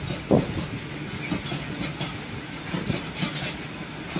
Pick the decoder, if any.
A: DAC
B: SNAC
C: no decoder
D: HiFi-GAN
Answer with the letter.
C